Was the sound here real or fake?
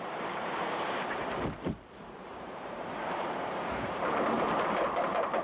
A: fake